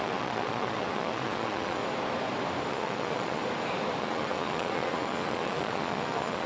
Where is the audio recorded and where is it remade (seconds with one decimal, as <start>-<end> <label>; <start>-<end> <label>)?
0.0-1.8 remade; 1.8-2.7 recorded; 2.7-3.4 remade; 3.4-4.0 recorded; 4.0-6.5 remade